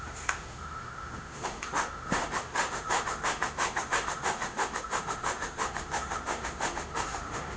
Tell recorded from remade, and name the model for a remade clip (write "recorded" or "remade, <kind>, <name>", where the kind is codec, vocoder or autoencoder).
remade, autoencoder, DAC-VAE